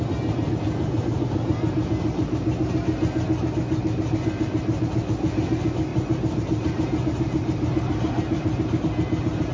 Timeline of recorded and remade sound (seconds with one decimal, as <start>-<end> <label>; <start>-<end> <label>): 0.0-5.9 recorded; 5.9-8.8 remade; 8.8-9.5 recorded